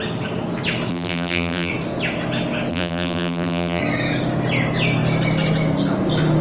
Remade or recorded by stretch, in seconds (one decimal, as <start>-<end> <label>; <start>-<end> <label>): 0.0-0.9 recorded; 0.9-1.7 remade; 1.7-2.7 recorded; 2.7-3.8 remade; 3.8-6.4 recorded